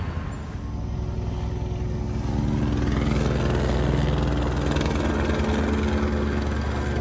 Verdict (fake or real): real